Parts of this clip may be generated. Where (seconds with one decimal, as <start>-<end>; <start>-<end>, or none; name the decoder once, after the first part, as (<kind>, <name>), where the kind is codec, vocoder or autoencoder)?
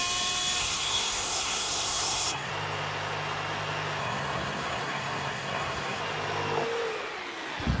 0.6-2.5 (codec, SNAC); 4.0-6.0